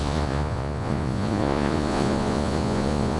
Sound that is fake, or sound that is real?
fake